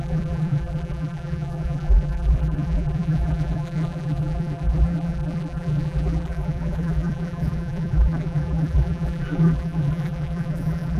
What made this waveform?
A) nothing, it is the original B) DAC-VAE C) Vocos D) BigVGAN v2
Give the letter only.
D